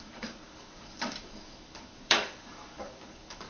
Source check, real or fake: fake